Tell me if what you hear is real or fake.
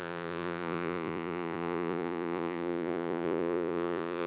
fake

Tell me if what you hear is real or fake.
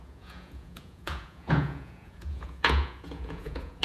fake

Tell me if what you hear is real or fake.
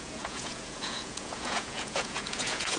fake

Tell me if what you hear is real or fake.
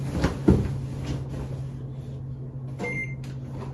real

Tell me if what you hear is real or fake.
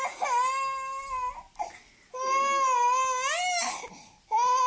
real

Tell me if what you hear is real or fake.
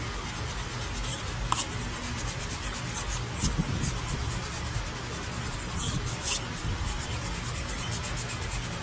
real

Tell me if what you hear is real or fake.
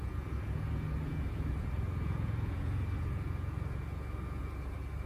fake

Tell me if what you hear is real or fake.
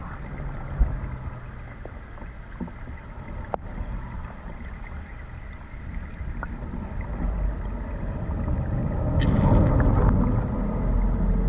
real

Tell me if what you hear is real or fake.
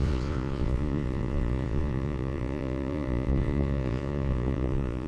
fake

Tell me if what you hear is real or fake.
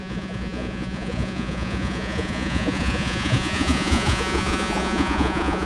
fake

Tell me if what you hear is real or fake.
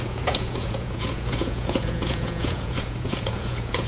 fake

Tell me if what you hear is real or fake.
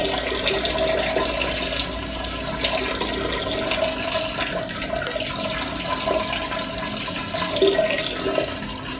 real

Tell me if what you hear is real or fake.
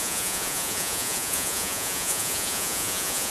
fake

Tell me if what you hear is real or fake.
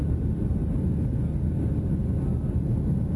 real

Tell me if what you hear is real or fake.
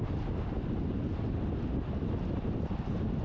real